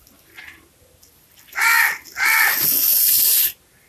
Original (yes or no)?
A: yes